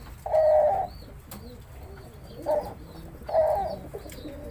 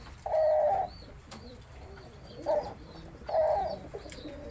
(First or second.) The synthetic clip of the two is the second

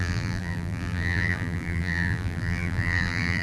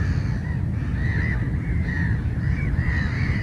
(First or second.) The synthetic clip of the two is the first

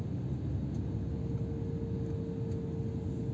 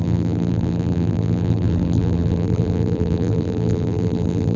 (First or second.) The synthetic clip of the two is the second